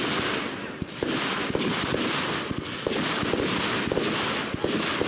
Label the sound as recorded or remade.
recorded